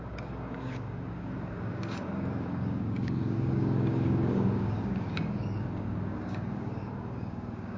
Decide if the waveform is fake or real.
fake